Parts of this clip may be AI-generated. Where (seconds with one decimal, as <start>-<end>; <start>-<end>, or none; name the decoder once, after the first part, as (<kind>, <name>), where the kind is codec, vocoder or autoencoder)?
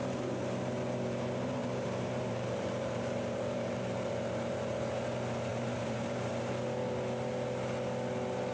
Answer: 1.6-4.7 (vocoder, BigVGAN v2); 5.5-6.3